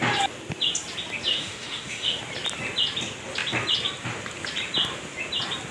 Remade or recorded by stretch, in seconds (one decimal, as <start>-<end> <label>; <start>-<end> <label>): 0.0-1.3 recorded; 1.3-2.2 remade; 2.2-5.7 recorded